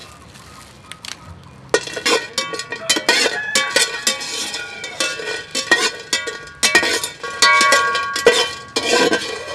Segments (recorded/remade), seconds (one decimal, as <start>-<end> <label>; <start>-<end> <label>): 0.0-9.5 recorded